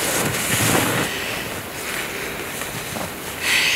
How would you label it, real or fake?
real